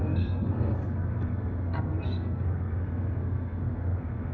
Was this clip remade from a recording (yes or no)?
yes